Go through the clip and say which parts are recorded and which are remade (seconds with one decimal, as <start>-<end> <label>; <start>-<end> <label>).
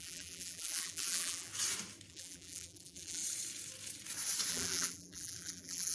0.0-1.5 remade; 1.5-2.1 recorded; 2.1-3.2 remade; 3.2-4.5 recorded; 4.5-5.9 remade